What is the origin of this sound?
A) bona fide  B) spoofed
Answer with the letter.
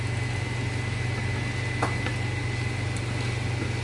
A